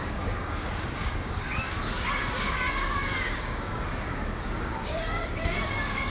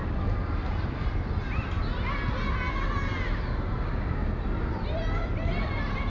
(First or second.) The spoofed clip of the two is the first